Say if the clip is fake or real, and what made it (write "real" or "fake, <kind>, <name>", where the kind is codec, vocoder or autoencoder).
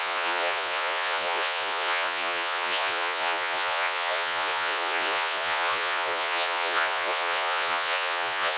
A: fake, vocoder, Vocos